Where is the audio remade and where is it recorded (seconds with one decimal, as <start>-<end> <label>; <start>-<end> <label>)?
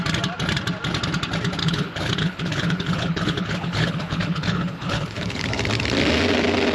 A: 0.0-1.6 recorded; 1.6-5.6 remade; 5.6-6.7 recorded